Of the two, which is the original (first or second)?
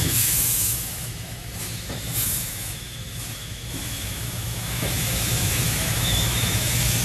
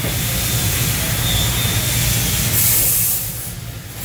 second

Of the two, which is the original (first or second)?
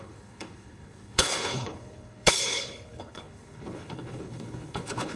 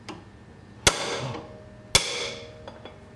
second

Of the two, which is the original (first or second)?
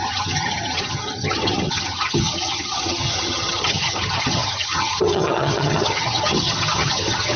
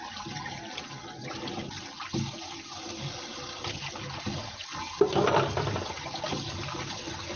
second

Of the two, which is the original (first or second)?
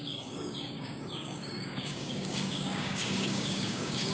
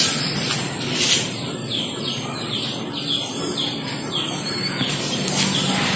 second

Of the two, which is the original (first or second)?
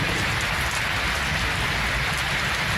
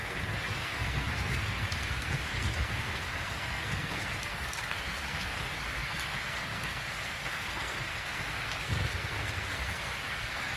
first